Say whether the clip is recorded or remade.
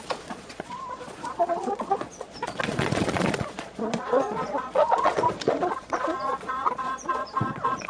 remade